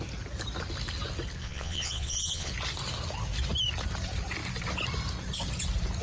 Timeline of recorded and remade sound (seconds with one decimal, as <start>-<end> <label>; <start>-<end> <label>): 0.0-1.4 recorded; 1.4-2.5 remade; 2.5-6.0 recorded